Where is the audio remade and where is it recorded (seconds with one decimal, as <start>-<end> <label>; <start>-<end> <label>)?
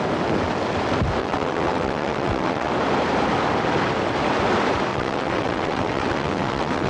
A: 0.0-1.2 recorded; 1.2-2.7 remade; 2.7-4.9 recorded; 4.9-6.9 remade